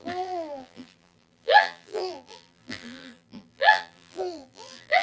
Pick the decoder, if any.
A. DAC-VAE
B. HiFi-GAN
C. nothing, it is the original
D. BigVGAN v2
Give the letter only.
D